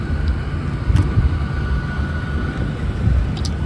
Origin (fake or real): real